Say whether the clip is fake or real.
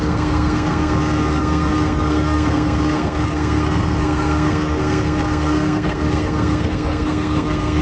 fake